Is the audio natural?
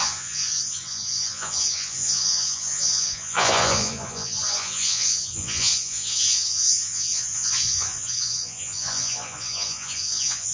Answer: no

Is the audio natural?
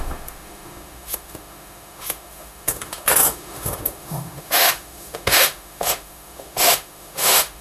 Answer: no